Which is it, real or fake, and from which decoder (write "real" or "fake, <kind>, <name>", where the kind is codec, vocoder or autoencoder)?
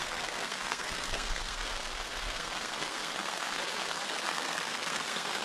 fake, codec, SNAC